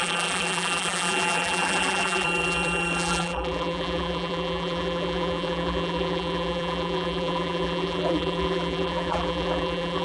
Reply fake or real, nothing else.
fake